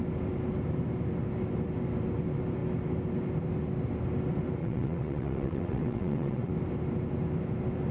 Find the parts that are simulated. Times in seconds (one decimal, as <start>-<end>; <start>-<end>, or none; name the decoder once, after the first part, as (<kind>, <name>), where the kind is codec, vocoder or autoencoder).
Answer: 4.6-6.5 (vocoder, WaveNeXt)